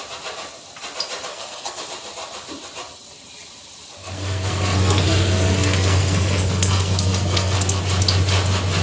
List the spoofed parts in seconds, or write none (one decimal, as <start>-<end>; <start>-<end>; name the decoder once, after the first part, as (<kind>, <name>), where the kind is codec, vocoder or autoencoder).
1.3-1.8 (codec, SNAC); 4.0-7.8